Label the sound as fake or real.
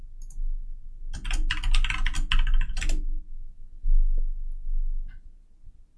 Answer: real